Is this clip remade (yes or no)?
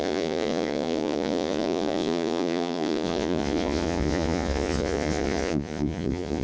yes